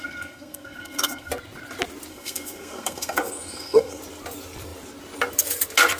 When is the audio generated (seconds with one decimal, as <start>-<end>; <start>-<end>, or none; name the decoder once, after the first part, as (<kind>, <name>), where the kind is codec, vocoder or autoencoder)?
0.0-1.3 (codec, SNAC); 2.1-4.0